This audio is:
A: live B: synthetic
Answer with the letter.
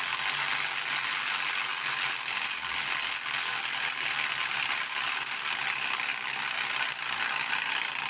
A